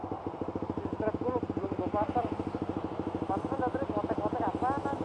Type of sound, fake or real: real